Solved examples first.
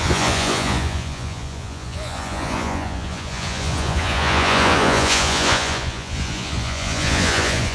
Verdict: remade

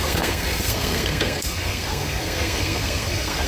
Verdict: remade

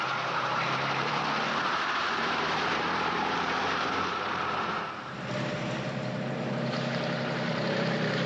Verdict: remade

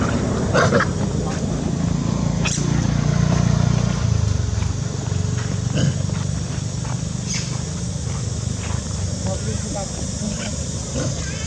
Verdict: recorded